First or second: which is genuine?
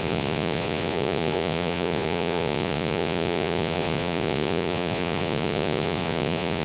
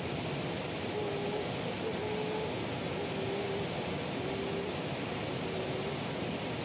second